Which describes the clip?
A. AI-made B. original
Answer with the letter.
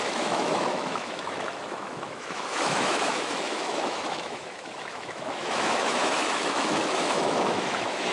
A